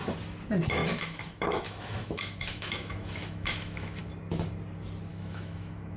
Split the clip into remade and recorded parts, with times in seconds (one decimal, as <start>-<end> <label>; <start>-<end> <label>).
0.0-0.8 recorded; 0.8-4.0 remade; 4.0-5.1 recorded; 5.1-6.0 remade